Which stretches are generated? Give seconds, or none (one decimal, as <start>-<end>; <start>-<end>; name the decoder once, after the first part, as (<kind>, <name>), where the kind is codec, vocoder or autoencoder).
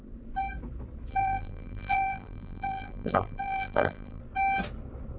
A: 1.1-4.2 (vocoder, BigVGAN v2)